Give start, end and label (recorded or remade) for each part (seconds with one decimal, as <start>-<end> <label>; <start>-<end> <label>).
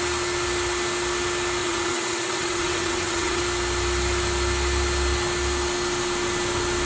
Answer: 0.0-1.6 recorded; 1.6-3.4 remade; 3.4-6.9 recorded